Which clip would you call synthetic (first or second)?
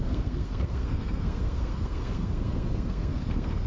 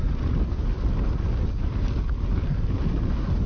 first